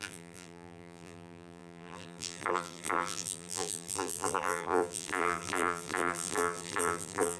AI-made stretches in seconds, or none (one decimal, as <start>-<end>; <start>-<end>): 0.0-7.4